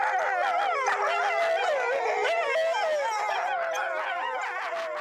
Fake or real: real